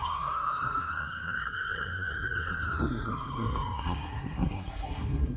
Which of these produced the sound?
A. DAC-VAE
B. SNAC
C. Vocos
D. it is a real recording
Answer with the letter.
B